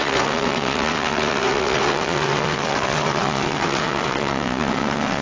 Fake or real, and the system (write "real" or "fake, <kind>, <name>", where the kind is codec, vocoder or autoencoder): fake, vocoder, WaveNeXt